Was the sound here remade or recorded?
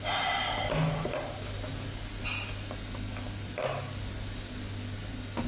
recorded